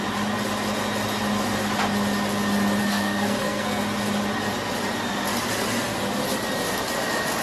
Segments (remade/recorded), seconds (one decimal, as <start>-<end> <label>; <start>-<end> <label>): 0.0-2.8 recorded; 2.8-3.8 remade; 3.8-7.4 recorded